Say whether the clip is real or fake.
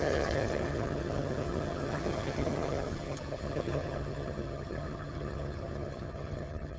fake